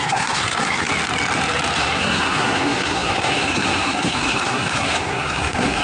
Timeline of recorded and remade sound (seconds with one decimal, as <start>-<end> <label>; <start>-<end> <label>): 0.0-0.9 remade; 0.9-1.8 recorded; 1.8-5.8 remade